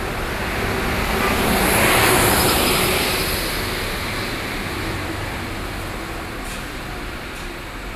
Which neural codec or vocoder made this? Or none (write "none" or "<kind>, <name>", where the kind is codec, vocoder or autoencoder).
none